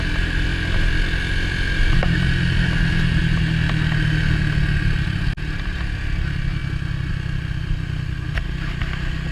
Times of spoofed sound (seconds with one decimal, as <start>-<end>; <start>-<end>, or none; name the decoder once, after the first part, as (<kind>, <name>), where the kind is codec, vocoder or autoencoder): none